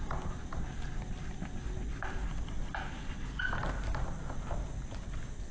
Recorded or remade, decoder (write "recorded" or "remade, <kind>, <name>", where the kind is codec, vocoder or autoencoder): recorded